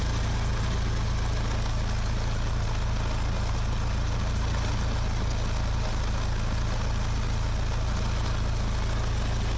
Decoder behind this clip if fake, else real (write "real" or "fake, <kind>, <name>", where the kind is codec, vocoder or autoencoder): real